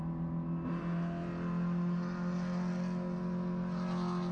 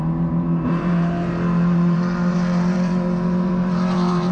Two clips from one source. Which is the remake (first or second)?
second